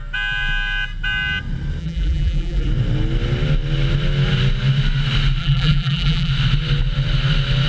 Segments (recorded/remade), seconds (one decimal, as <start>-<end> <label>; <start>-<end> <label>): 0.0-1.8 recorded; 1.8-2.7 remade; 2.7-5.4 recorded; 5.4-6.3 remade; 6.3-7.7 recorded